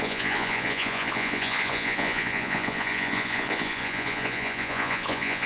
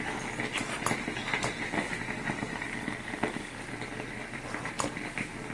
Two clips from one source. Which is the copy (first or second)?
first